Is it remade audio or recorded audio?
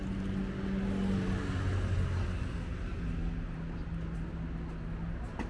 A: recorded